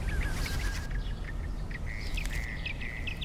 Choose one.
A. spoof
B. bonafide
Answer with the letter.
B